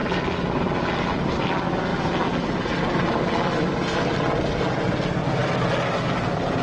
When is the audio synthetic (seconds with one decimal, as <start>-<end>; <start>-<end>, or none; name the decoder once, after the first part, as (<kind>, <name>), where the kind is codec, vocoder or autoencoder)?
none